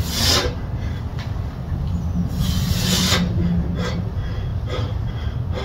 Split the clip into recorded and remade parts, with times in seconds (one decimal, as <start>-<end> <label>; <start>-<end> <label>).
0.0-4.5 recorded; 4.5-5.1 remade; 5.1-5.6 recorded